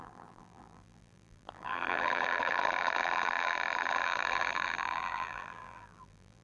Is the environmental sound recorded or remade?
remade